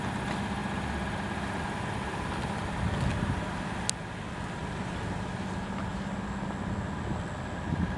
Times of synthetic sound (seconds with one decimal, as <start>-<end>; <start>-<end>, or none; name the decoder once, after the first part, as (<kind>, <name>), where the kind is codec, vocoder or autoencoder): none